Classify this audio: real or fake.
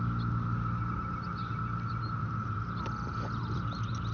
real